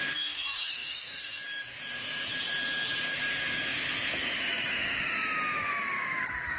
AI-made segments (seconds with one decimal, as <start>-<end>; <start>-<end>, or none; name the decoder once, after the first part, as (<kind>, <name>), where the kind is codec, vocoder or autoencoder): 0.0-6.6 (autoencoder, DAC-VAE)